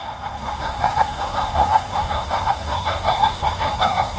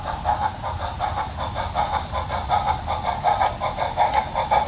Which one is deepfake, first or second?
first